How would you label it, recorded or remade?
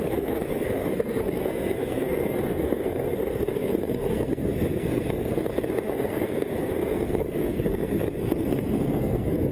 remade